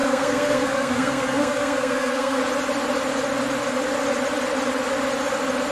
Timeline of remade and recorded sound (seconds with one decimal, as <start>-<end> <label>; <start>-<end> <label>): 0.0-2.4 remade; 2.4-5.7 recorded